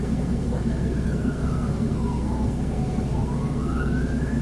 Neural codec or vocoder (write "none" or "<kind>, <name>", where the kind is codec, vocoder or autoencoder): codec, SNAC